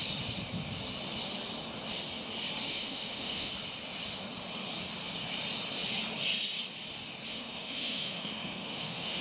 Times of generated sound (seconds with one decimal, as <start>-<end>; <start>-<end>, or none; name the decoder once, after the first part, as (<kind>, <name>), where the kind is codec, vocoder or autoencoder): 2.7-3.5 (autoencoder, DAC-VAE); 7.3-9.2

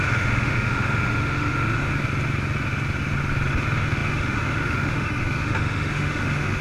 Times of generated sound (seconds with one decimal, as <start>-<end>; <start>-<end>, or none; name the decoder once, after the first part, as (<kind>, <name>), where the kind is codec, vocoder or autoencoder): 0.0-1.9 (autoencoder, DAC-VAE); 3.5-6.6